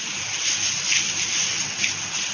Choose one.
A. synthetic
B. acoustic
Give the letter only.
B